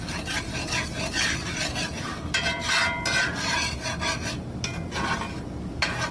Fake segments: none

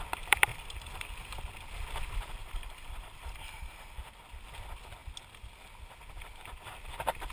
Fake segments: 0.5-1.4 (vocoder, BigVGAN v2); 2.4-4.1

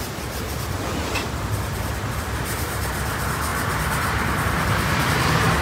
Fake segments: 3.5-5.6 (vocoder, BigVGAN v2)